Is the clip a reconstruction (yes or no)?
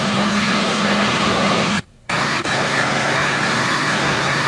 yes